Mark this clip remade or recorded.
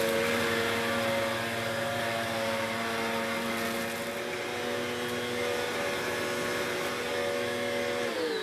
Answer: recorded